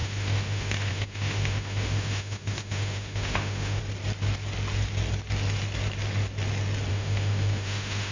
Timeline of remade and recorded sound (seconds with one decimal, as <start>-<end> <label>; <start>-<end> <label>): 0.0-3.8 remade; 3.8-6.9 recorded; 6.9-8.1 remade